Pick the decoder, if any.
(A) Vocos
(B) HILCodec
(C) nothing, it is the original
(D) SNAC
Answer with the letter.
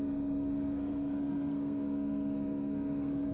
D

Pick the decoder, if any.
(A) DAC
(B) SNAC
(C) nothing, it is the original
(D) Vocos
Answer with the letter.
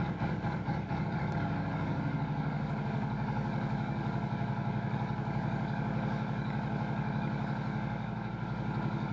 A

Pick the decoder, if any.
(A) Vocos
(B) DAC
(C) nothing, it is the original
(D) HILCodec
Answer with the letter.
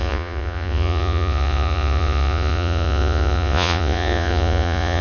A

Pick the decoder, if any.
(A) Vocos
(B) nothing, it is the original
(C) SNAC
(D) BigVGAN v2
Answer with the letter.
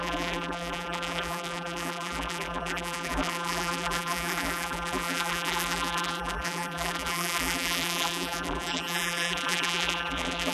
D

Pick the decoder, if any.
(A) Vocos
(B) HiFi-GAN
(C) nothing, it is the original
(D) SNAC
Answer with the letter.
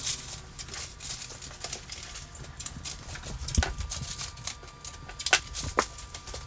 C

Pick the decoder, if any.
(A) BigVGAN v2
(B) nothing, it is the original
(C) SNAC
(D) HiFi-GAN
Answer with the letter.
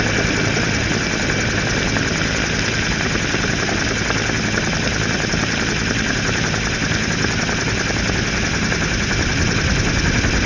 B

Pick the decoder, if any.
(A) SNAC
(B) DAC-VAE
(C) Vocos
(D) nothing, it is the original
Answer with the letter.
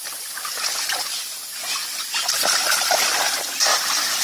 D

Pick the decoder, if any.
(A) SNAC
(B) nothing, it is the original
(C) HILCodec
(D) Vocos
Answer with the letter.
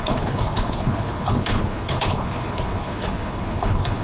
C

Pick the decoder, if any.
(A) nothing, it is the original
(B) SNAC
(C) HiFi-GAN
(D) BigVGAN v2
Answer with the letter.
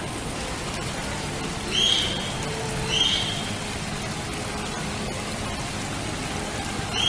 A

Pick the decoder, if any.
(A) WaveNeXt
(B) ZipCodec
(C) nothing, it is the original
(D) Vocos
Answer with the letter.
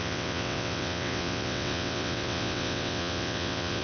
A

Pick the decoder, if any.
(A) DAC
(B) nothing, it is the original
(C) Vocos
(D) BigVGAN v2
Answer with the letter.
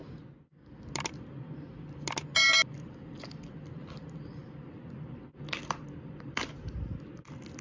B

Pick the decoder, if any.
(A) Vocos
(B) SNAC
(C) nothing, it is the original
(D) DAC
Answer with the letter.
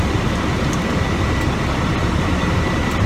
C